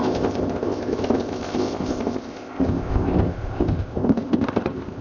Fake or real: fake